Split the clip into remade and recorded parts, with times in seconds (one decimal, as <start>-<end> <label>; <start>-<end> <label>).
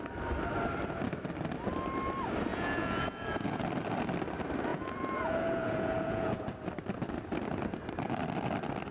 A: 0.0-2.5 recorded; 2.5-3.6 remade; 3.6-4.7 recorded; 4.7-6.4 remade; 6.4-8.9 recorded